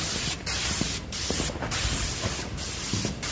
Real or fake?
real